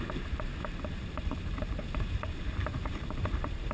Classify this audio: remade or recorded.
remade